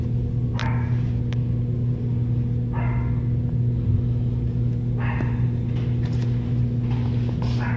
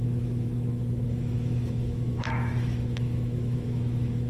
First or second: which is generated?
second